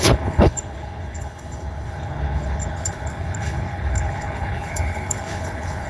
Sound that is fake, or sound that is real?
fake